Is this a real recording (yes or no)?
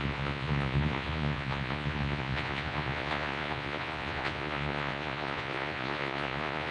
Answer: no